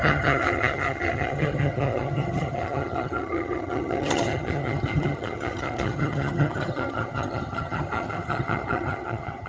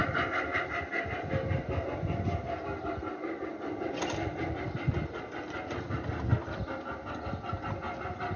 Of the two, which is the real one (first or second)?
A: second